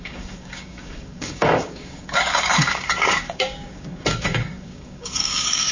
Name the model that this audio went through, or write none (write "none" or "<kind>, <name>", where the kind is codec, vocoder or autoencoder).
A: codec, DAC